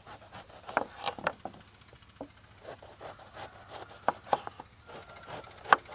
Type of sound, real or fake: real